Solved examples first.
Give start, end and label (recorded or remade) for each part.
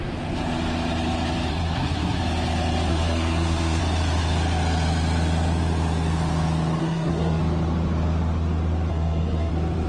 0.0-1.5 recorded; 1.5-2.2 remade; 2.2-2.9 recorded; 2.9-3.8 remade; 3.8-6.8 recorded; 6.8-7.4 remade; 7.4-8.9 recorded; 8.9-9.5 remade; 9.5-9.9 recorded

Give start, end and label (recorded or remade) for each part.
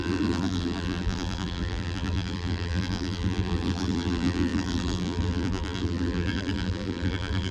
0.0-7.5 remade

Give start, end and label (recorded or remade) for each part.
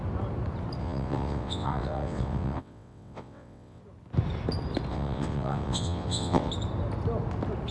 0.0-0.8 recorded; 0.8-3.8 remade; 3.8-4.9 recorded; 4.9-6.5 remade; 6.5-7.7 recorded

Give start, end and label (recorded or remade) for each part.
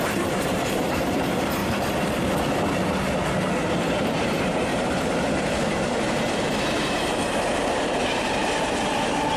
0.0-1.6 remade; 1.6-4.0 recorded; 4.0-9.4 remade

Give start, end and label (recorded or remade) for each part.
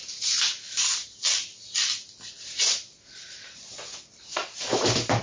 0.0-5.2 recorded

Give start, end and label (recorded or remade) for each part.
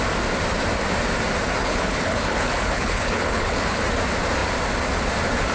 0.0-1.6 recorded; 1.6-3.8 remade; 3.8-5.5 recorded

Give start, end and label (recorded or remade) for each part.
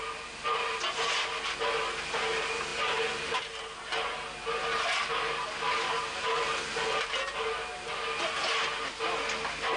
0.0-9.8 recorded